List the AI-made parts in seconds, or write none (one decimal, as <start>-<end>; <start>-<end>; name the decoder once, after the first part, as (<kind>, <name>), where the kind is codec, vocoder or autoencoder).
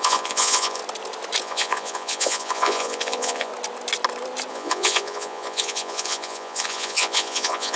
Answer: 0.0-0.8 (vocoder, Vocos); 1.4-3.5; 4.5-7.8